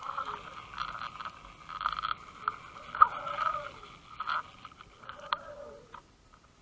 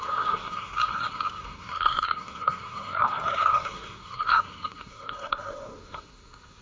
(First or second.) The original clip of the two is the first